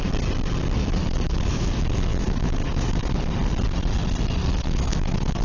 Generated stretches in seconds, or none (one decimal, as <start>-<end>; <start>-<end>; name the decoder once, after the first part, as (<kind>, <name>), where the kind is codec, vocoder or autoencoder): 1.0-3.2 (autoencoder, DAC-VAE); 4.4-5.4